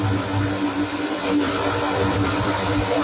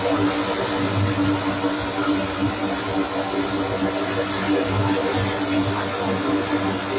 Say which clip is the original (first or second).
second